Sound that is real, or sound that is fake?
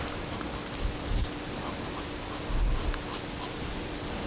real